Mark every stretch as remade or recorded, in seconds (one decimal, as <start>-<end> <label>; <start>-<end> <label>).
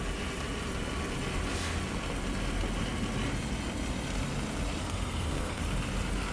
0.0-4.8 recorded; 4.8-5.6 remade; 5.6-6.3 recorded